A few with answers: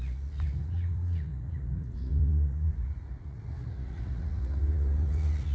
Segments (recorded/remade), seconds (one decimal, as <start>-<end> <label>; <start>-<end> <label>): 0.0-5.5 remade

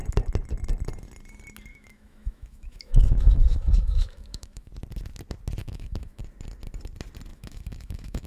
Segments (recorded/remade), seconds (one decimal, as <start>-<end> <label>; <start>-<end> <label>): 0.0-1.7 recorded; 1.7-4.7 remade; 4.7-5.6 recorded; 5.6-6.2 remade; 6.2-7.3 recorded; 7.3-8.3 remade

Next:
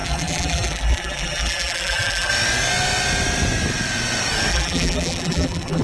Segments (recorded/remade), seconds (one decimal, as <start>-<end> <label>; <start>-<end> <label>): 0.0-2.3 remade; 2.3-4.5 recorded; 4.5-5.8 remade

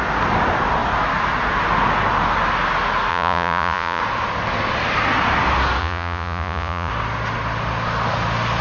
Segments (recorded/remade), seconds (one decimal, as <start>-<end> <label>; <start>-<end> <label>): 0.0-3.1 recorded; 3.1-4.0 remade; 4.0-5.8 recorded; 5.8-6.9 remade; 6.9-8.6 recorded